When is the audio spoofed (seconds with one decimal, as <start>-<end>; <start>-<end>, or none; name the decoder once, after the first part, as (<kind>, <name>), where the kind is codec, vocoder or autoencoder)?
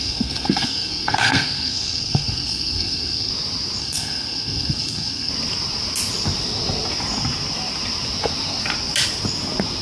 0.0-3.3 (codec, SNAC); 3.8-5.3